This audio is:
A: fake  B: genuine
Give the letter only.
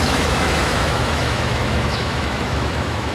A